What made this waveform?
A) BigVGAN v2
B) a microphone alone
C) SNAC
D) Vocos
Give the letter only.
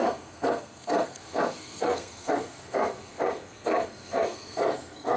C